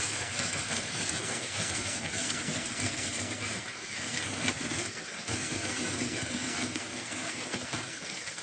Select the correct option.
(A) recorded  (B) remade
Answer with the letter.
B